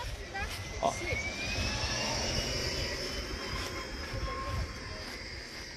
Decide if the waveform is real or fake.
real